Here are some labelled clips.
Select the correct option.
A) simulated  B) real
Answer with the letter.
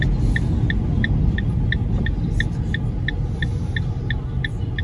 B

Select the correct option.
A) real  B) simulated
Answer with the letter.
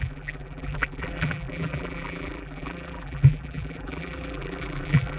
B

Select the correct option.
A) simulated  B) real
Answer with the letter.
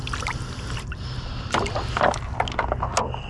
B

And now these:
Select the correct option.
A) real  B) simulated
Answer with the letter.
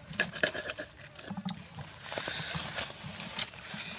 A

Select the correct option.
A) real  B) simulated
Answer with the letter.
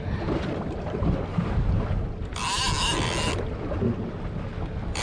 A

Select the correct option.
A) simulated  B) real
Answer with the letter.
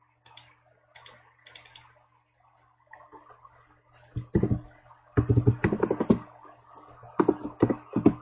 B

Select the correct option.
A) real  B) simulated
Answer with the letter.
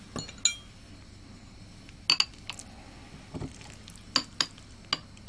A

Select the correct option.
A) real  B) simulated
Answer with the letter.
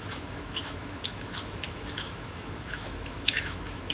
B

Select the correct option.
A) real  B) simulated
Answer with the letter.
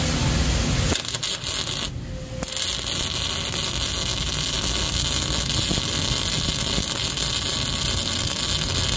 A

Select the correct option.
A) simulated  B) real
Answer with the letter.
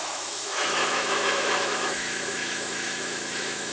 A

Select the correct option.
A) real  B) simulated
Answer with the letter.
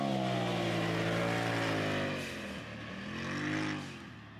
A